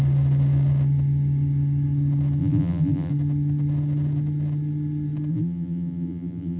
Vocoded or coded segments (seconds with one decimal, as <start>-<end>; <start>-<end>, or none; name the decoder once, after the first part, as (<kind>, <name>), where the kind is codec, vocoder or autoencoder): 2.4-3.1 (vocoder, BigVGAN v2); 5.3-6.6